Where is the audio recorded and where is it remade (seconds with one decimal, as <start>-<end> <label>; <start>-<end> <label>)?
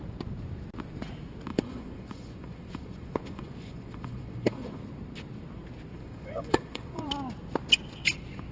0.0-1.5 recorded; 1.5-4.8 remade; 4.8-5.9 recorded; 5.9-7.1 remade; 7.1-8.5 recorded